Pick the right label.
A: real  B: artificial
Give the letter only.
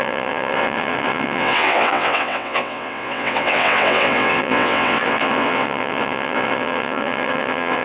B